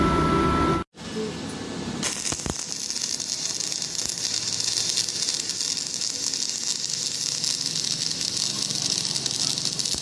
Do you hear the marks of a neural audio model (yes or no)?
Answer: no